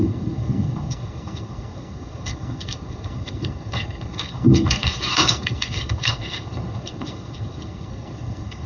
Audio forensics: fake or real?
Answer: fake